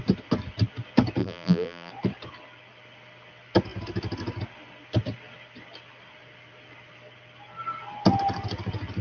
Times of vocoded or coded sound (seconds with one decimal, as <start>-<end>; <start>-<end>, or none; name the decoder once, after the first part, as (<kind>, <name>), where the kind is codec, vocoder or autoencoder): 1.2-1.9 (vocoder, BigVGAN v2)